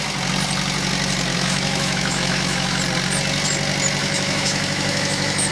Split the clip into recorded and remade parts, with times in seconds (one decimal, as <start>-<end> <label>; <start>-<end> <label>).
0.0-1.3 recorded; 1.3-2.8 remade; 2.8-4.0 recorded; 4.0-5.5 remade